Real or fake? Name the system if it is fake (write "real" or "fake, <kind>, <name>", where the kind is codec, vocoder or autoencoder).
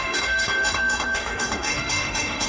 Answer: fake, autoencoder, DAC-VAE